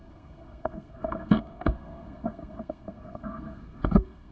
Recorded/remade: remade